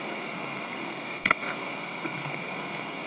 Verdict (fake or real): fake